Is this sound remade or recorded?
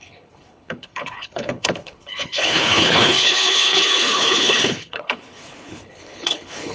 remade